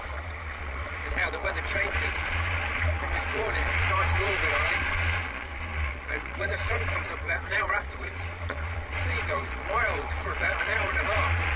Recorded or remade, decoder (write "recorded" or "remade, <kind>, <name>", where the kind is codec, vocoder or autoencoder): remade, vocoder, Vocos